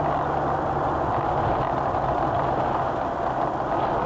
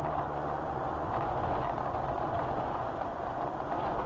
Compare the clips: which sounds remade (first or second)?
second